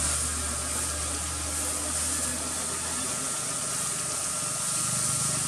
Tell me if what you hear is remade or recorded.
recorded